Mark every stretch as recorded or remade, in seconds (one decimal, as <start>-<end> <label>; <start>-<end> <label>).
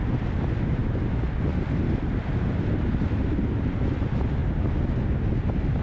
0.0-5.8 recorded